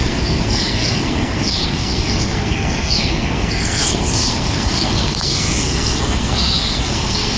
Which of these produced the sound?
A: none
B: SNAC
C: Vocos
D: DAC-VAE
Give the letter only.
B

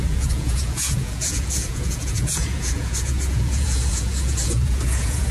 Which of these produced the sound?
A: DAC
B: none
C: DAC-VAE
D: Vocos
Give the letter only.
D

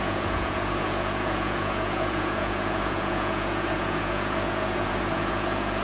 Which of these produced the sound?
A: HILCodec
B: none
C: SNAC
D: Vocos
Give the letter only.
D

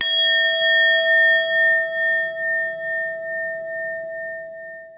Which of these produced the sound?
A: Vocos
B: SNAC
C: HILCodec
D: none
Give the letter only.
D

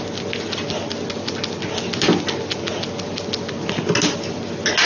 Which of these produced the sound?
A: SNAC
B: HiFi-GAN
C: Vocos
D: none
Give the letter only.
D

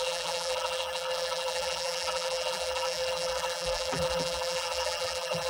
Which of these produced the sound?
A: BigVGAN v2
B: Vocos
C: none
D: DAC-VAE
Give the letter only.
A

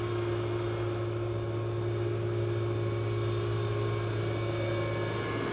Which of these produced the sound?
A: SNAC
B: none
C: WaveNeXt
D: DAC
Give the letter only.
B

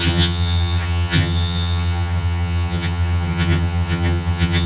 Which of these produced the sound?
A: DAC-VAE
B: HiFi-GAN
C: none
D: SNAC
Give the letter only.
B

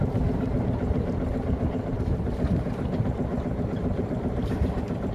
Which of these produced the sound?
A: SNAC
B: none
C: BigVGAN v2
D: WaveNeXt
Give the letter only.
C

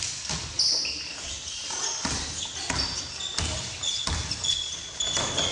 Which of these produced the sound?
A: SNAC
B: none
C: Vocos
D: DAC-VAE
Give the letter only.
B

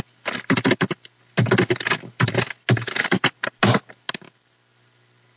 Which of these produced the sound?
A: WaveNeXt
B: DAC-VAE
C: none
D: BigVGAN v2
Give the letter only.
C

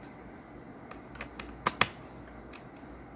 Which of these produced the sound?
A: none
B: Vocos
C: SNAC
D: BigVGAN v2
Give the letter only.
A